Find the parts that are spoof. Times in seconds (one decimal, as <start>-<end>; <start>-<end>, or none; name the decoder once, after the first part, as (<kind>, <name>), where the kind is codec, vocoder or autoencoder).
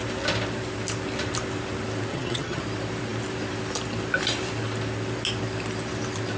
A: 2.1-2.6 (vocoder, HiFi-GAN)